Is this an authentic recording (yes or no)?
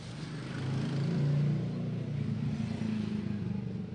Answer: yes